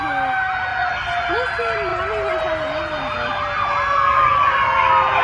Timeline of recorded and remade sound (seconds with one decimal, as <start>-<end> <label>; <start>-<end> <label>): 0.0-0.7 recorded; 0.7-1.3 remade; 1.3-4.1 recorded; 4.1-4.8 remade; 4.8-5.2 recorded